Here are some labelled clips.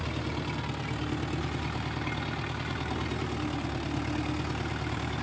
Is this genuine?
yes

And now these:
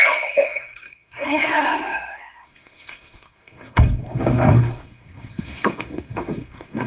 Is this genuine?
no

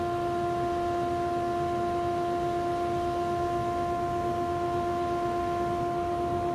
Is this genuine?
yes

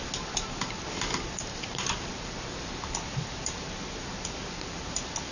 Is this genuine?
yes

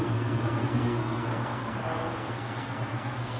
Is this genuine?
no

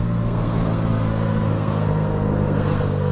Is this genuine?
no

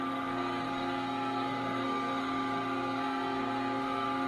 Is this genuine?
no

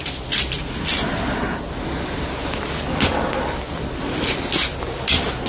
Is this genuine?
yes